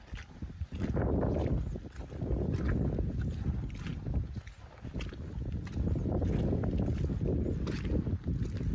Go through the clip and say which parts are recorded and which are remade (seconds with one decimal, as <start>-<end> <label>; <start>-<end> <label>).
0.0-8.7 recorded